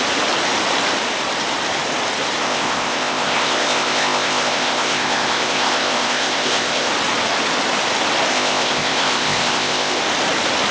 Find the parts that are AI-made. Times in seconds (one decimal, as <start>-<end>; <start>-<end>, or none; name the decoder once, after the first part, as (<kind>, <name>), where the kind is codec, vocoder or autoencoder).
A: 2.4-6.9 (codec, ZipCodec); 8.3-10.0

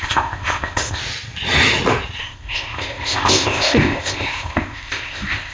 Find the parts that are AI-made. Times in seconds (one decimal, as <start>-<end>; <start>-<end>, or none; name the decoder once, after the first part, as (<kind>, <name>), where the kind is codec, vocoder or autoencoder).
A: 0.0-1.0 (codec, ZipCodec); 2.2-5.5

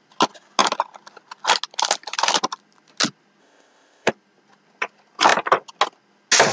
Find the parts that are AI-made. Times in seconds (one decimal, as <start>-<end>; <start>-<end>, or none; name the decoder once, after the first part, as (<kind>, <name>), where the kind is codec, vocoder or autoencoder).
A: 3.4-4.1 (codec, ZipCodec)

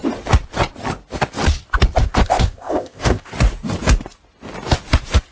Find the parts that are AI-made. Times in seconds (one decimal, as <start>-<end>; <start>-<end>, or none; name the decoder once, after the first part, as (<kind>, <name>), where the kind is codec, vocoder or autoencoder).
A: 2.0-3.3 (codec, ZipCodec)